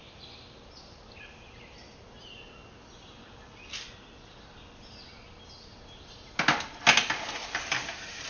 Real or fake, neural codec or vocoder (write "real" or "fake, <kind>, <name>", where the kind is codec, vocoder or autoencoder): real